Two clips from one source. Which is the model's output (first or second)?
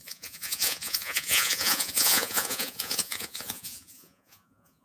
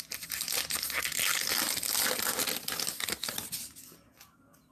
first